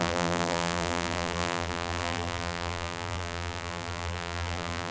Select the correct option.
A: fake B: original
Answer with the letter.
A